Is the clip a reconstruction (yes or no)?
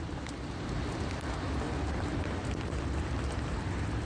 no